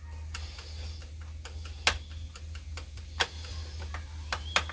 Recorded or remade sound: recorded